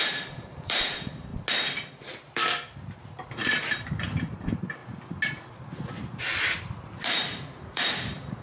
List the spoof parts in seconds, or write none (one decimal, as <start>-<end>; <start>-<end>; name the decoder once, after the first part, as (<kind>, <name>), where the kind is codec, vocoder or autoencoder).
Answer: 0.0-1.3 (vocoder, BigVGAN v2); 2.0-4.8; 6.8-8.4